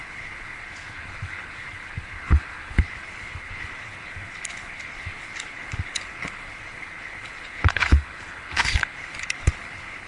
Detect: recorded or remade remade